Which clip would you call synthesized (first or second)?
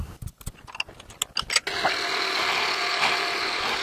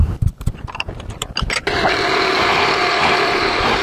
second